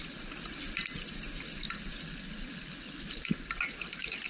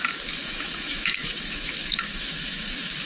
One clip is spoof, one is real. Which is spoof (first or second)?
second